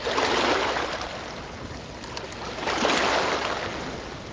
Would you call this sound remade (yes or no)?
no